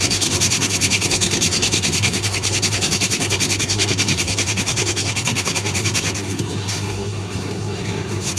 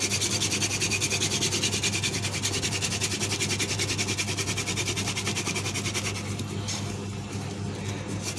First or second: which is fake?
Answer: first